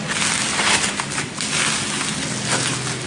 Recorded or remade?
recorded